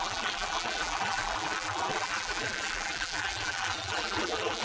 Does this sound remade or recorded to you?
remade